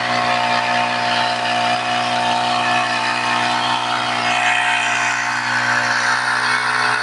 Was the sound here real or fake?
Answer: real